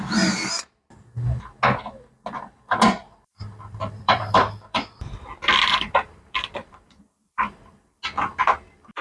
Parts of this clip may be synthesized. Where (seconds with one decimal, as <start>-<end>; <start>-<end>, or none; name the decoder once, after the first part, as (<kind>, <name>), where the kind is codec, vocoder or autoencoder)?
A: 3.0-8.0 (vocoder, BigVGAN v2)